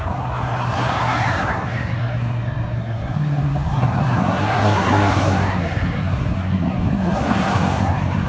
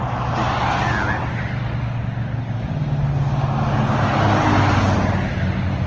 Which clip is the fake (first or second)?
first